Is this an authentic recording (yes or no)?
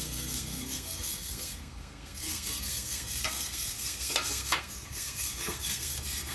no